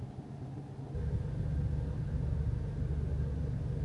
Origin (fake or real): real